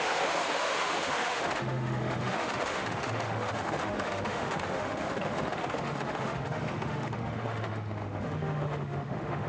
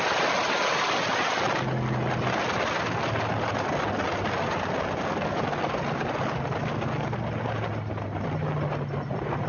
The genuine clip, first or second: second